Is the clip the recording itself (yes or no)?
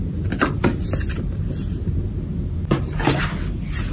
yes